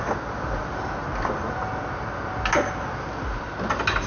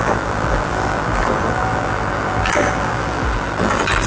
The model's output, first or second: second